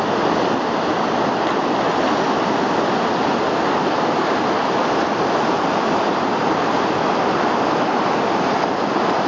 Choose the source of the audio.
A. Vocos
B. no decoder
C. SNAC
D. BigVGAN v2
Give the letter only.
B